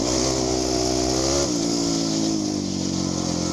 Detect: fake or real real